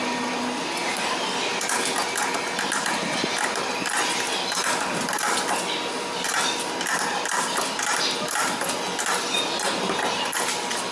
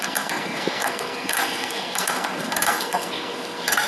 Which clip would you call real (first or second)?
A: first